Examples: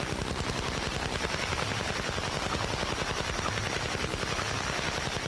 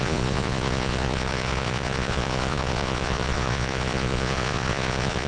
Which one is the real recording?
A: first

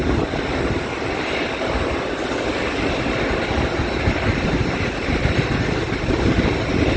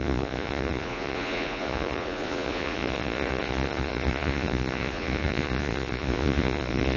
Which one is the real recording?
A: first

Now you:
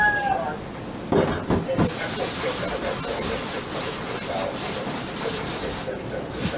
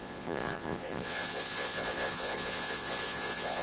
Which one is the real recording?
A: first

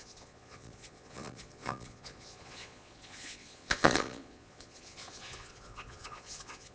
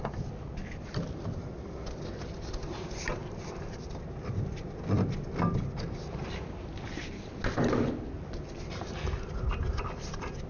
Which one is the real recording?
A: second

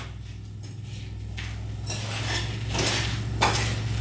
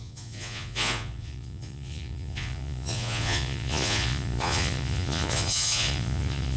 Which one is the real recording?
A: first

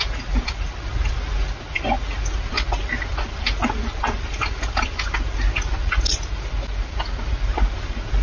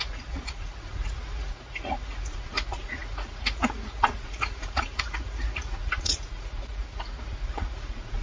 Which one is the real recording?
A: first